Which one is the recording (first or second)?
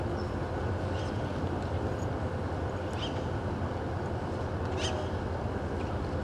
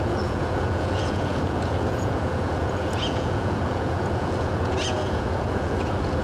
first